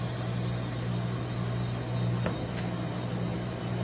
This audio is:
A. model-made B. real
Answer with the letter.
B